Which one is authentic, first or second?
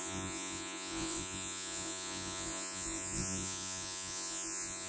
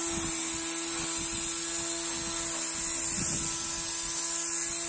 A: second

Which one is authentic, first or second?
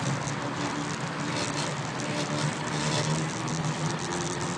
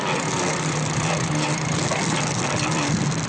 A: first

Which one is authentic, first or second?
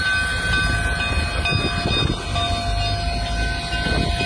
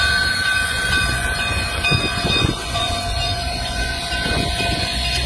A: first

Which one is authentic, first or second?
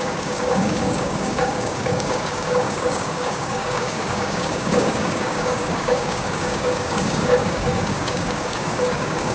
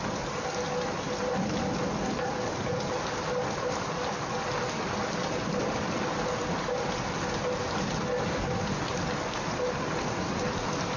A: second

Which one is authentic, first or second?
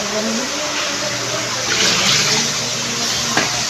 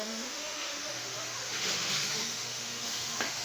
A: first